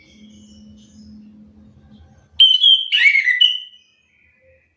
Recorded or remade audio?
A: recorded